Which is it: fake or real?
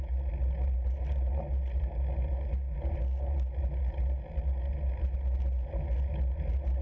real